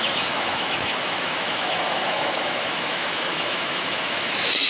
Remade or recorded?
remade